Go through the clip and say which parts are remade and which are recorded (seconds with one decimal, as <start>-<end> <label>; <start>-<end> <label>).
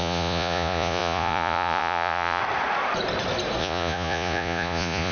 0.0-2.4 remade; 2.4-3.6 recorded; 3.6-5.1 remade